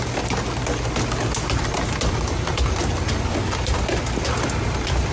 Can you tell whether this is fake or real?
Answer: real